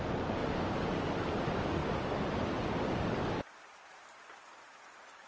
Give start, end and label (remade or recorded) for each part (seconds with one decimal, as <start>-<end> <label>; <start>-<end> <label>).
0.0-5.3 recorded